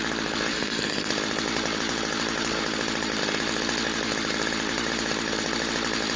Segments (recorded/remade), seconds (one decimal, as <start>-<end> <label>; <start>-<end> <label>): 0.0-0.5 recorded; 0.5-1.1 remade; 1.1-6.2 recorded